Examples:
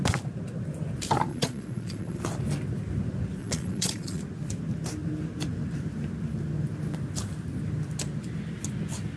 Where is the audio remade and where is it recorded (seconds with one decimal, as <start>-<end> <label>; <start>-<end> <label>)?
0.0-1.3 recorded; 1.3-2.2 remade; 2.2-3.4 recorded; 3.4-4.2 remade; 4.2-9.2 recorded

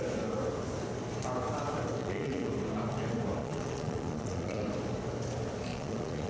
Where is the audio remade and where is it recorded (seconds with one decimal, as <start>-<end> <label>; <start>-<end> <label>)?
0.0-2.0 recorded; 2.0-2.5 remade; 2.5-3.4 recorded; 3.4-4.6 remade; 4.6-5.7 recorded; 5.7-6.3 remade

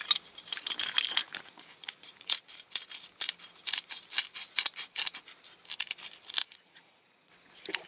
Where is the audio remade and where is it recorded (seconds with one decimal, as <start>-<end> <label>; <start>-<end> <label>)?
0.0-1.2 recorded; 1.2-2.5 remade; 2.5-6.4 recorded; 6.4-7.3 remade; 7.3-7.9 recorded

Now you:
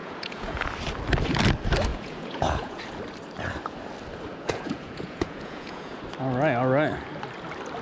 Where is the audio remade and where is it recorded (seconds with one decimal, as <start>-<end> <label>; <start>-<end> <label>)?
0.0-0.7 remade; 0.7-1.9 recorded; 1.9-2.8 remade; 2.8-4.3 recorded; 4.3-6.0 remade; 6.0-7.8 recorded

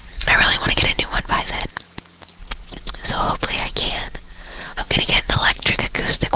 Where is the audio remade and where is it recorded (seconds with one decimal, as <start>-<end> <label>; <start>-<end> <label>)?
0.0-1.7 remade; 1.7-2.4 recorded; 2.4-6.4 remade